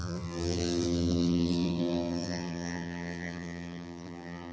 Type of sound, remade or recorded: remade